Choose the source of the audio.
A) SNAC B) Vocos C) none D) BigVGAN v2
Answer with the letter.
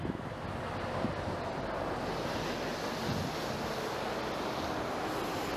C